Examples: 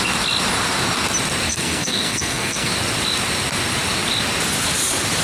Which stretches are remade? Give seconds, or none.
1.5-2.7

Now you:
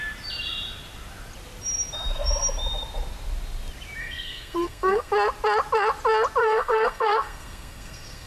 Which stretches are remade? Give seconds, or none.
4.0-5.1; 6.4-8.3

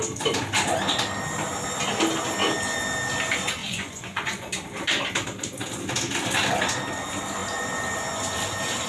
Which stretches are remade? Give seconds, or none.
3.6-4.5

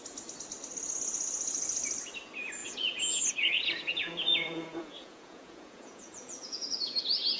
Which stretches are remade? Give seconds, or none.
2.6-7.0

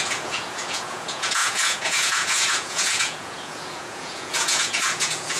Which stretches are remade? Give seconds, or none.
0.0-5.4

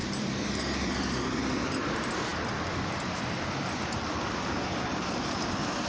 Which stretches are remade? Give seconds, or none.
0.0-5.9

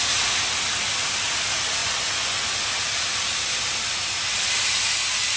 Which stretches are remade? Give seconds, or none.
1.8-2.5